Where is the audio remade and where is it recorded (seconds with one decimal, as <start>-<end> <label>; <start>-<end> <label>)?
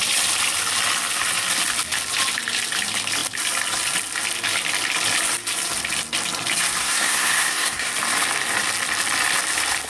0.0-6.8 recorded; 6.8-7.9 remade; 7.9-9.9 recorded